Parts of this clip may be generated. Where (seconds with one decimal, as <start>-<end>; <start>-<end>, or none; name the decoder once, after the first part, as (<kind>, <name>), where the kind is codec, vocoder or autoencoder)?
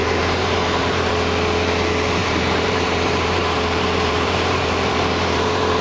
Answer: 0.0-1.1 (vocoder, BigVGAN v2); 2.2-5.8